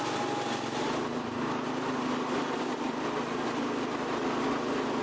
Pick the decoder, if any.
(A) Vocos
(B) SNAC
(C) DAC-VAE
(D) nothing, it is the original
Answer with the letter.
D